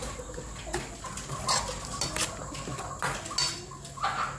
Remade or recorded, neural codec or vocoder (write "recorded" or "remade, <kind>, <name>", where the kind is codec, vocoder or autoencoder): recorded